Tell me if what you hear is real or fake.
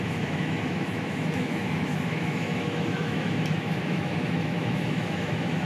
fake